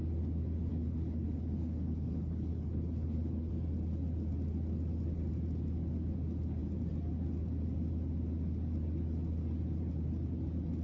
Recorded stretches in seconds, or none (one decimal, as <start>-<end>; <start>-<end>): 0.0-0.7; 3.5-10.8